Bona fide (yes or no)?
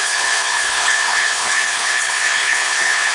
no